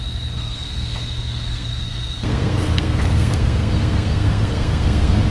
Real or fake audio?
fake